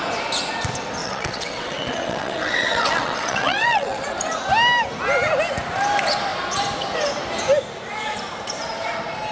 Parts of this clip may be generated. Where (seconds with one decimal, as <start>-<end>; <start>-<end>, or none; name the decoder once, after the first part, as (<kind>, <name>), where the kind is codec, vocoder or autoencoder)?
1.0-4.0 (vocoder, WaveNeXt)